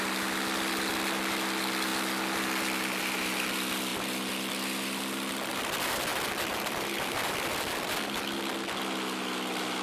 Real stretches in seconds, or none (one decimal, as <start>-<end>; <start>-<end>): 0.0-9.8